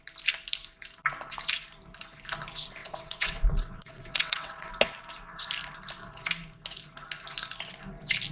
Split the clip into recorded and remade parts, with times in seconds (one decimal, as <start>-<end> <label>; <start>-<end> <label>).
0.0-2.8 recorded; 2.8-4.7 remade; 4.7-8.3 recorded